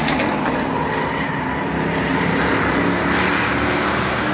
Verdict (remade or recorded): recorded